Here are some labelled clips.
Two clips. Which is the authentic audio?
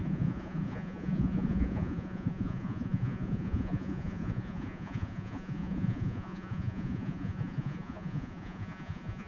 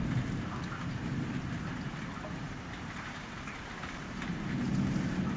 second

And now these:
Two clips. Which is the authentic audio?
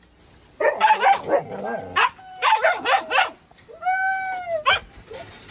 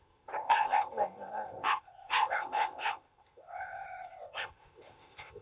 first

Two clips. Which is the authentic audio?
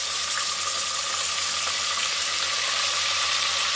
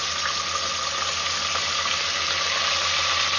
second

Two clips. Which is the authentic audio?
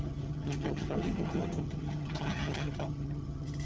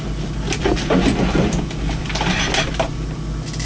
second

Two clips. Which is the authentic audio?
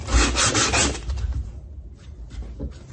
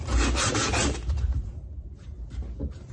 first